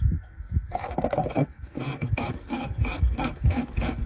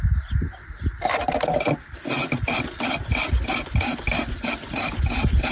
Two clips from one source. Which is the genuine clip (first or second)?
second